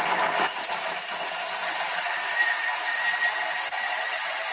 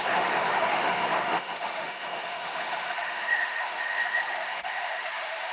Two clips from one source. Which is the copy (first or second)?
second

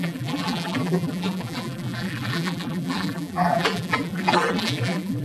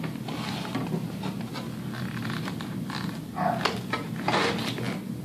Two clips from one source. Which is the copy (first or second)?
first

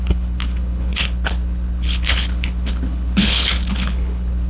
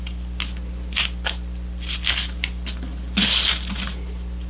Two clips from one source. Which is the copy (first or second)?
first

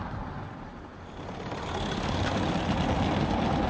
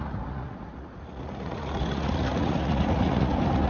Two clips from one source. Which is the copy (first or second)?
second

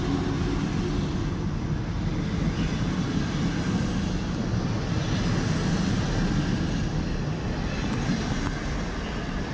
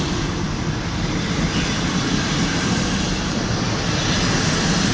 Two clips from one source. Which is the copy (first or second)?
second